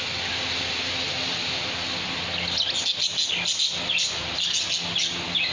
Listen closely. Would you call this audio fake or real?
real